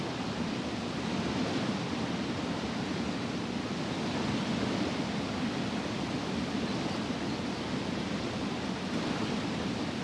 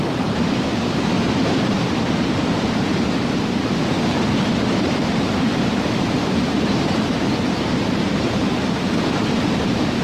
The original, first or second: first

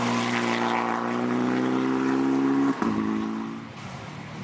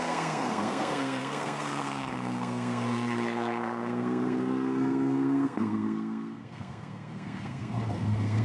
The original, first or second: first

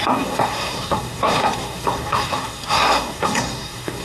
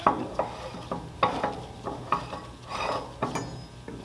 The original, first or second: second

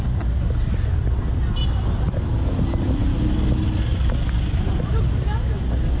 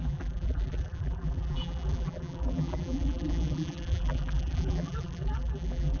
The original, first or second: first